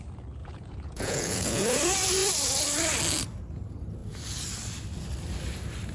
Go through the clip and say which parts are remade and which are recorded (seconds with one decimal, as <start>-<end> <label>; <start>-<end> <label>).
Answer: 0.0-0.4 recorded; 0.4-1.6 remade; 1.6-5.9 recorded